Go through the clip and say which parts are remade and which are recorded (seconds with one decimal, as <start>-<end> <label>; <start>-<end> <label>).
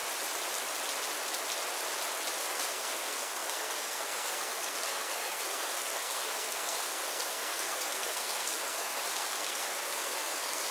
0.0-2.4 recorded; 2.4-10.7 remade